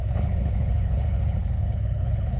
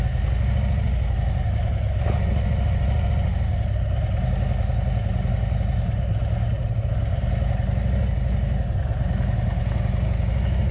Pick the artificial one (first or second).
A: first